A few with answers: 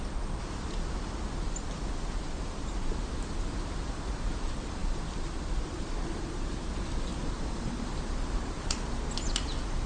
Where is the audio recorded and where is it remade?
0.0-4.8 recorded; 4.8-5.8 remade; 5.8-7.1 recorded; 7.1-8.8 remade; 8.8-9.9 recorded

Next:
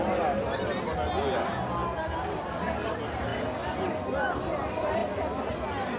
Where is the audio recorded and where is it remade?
0.0-6.0 recorded

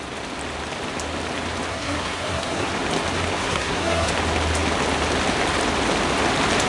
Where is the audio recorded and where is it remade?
0.0-1.7 recorded; 1.7-2.7 remade; 2.7-3.4 recorded; 3.4-4.1 remade; 4.1-6.7 recorded

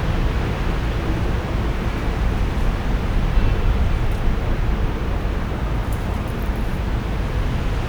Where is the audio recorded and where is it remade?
0.0-5.8 recorded; 5.8-6.8 remade; 6.8-7.9 recorded

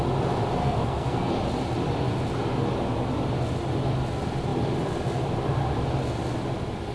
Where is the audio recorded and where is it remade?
0.0-0.6 recorded; 0.6-1.3 remade; 1.3-6.9 recorded

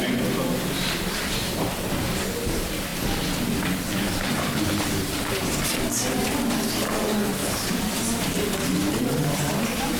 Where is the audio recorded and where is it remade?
0.0-7.4 recorded; 7.4-8.0 remade; 8.0-10.0 recorded

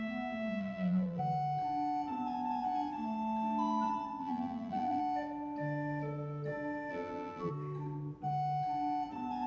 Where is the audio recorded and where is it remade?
0.0-0.6 recorded; 0.6-1.2 remade; 1.2-4.2 recorded; 4.2-5.0 remade; 5.0-6.9 recorded; 6.9-7.5 remade; 7.5-9.5 recorded

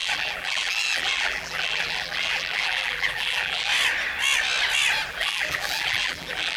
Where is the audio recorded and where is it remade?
0.0-3.7 remade; 3.7-5.1 recorded; 5.1-6.6 remade